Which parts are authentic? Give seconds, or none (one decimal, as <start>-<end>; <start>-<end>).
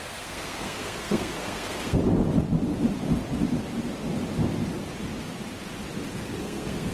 2.0-6.1